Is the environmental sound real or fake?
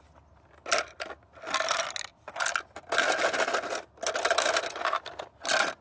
real